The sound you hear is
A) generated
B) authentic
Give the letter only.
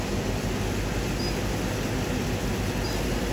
B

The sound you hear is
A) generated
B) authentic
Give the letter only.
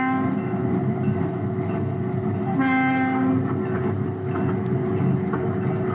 B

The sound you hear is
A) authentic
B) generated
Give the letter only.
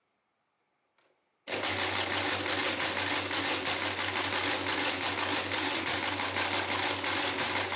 A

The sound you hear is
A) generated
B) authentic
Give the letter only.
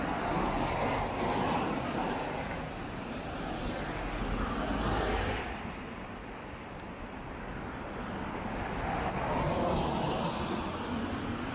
B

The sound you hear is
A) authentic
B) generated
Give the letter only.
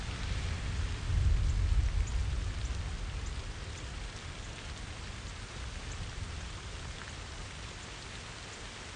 A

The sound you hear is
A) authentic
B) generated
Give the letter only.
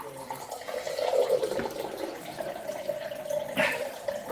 B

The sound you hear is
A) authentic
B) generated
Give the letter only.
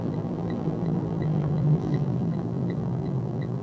B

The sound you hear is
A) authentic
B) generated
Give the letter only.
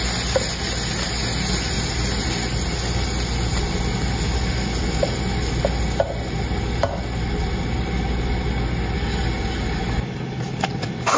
A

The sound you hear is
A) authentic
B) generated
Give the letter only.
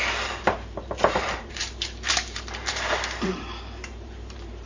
B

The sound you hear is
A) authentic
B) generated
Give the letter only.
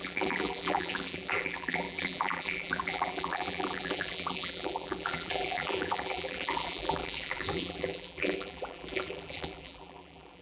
B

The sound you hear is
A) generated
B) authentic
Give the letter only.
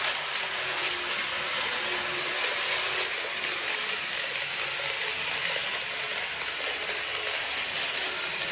B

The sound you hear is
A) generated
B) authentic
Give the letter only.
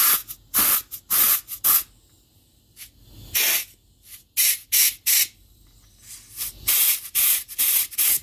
B